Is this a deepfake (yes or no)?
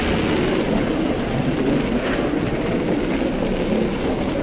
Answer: no